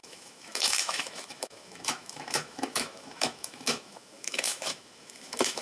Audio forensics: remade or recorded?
remade